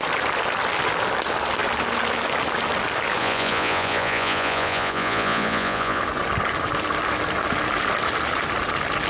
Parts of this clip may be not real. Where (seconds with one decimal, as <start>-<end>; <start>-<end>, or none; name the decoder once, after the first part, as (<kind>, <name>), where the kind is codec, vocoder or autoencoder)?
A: 3.2-6.0 (vocoder, Vocos)